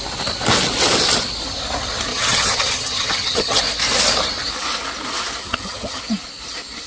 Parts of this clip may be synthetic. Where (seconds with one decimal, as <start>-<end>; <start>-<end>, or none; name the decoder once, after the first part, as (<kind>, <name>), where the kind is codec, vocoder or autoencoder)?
2.1-3.6 (vocoder, HiFi-GAN); 5.4-6.0